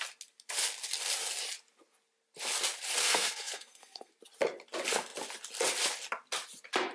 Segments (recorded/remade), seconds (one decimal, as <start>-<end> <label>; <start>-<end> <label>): 0.0-3.0 recorded; 3.0-4.1 remade; 4.1-6.9 recorded